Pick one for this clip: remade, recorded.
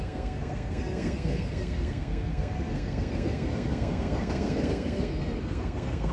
remade